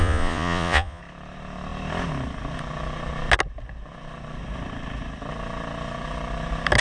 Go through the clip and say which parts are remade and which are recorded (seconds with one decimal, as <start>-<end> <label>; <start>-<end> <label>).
0.0-1.0 remade; 1.0-6.8 recorded